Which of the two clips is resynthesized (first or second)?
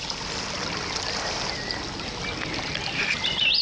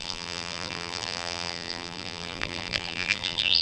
second